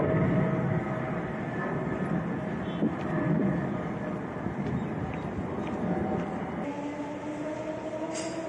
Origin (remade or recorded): recorded